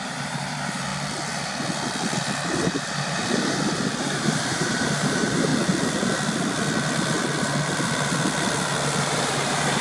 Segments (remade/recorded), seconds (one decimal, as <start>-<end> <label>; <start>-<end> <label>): 0.0-0.9 remade; 0.9-4.0 recorded; 4.0-5.5 remade; 5.5-9.0 recorded; 9.0-9.8 remade